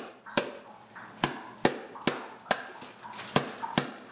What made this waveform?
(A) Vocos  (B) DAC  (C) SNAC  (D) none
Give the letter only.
D